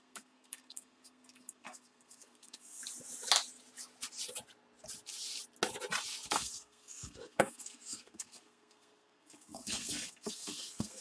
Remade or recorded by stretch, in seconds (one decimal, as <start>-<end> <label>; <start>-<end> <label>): 0.0-2.8 remade; 2.8-6.3 recorded; 6.3-11.0 remade